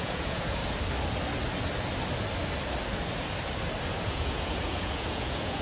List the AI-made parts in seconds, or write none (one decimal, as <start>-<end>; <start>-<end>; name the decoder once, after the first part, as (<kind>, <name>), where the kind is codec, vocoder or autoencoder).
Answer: 0.0-0.6 (vocoder, Vocos); 4.0-5.6